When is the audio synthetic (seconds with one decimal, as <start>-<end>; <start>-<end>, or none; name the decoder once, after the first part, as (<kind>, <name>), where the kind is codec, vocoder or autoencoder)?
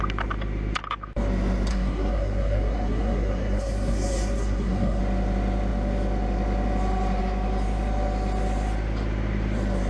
1.7-5.0 (codec, SNAC)